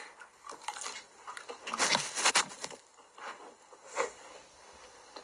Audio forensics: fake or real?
real